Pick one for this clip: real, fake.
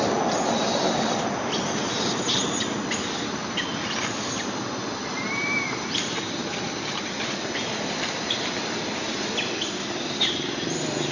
fake